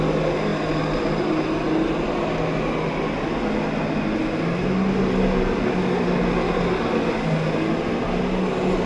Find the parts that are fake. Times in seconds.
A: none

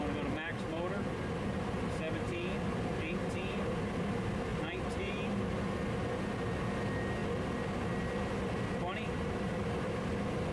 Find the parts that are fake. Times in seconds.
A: none

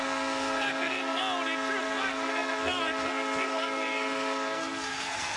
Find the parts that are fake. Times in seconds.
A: 0.0-1.2 (codec, SNAC); 1.8-5.4

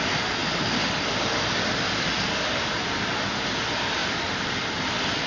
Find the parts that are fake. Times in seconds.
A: none